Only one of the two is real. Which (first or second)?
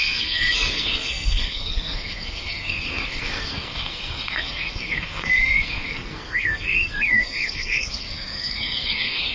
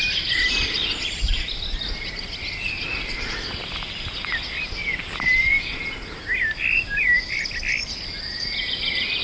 second